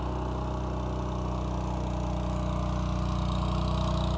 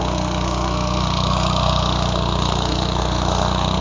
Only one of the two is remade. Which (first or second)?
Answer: second